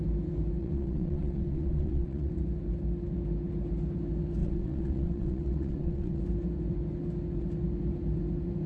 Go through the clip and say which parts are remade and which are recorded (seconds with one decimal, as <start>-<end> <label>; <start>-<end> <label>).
0.0-0.6 recorded; 0.6-2.3 remade; 2.3-4.4 recorded; 4.4-6.2 remade; 6.2-8.7 recorded